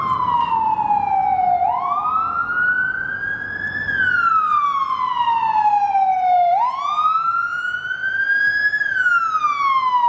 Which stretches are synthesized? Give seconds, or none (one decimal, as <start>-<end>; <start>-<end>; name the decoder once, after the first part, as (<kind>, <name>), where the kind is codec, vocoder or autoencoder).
none